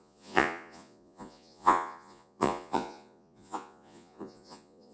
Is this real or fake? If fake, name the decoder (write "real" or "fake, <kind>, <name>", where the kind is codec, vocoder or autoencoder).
fake, vocoder, Vocos